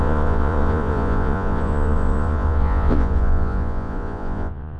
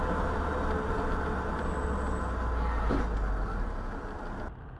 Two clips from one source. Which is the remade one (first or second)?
first